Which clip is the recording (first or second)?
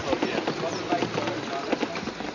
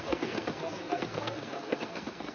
first